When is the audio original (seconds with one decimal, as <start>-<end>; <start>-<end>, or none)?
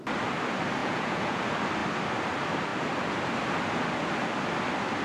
0.0-0.8; 1.4-5.0